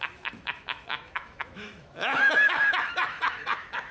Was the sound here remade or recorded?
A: remade